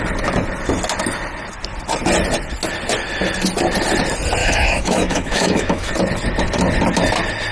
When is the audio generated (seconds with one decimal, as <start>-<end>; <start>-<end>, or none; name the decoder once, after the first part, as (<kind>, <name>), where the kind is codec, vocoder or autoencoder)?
4.4-5.9 (autoencoder, DAC-VAE)